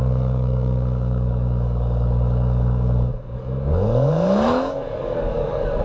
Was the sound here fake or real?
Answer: fake